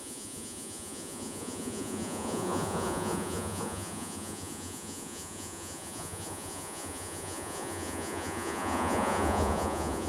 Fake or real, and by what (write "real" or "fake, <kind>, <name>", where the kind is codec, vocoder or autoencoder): fake, vocoder, Vocos